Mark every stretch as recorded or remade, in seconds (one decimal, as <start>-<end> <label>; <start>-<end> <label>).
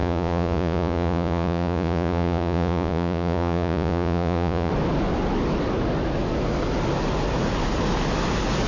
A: 0.0-4.7 remade; 4.7-8.7 recorded